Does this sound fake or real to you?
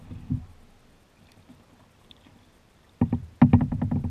real